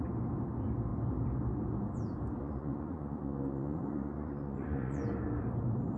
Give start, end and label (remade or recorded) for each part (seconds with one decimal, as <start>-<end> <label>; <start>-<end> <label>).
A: 0.0-2.4 recorded; 2.4-5.0 remade; 5.0-6.0 recorded